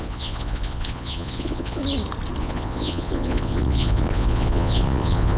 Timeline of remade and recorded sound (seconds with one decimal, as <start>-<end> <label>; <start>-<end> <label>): 0.0-1.8 remade; 1.8-2.4 recorded; 2.4-5.4 remade